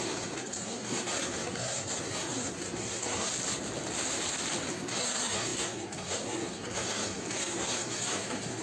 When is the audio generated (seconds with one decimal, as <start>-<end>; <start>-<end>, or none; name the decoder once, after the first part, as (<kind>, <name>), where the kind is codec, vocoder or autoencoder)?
0.0-3.3 (codec, SNAC); 4.7-8.6